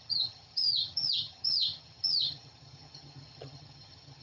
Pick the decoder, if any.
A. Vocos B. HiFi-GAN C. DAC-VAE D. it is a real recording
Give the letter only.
B